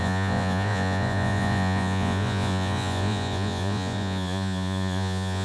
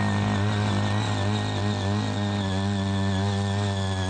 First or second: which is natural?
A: second